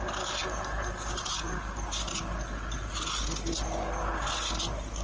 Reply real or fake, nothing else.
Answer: real